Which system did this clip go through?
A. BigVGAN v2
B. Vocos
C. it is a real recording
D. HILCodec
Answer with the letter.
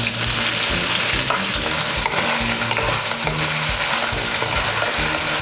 C